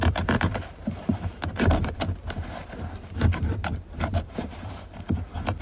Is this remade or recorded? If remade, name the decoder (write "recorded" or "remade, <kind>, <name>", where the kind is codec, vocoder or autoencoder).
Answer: remade, vocoder, BigVGAN v2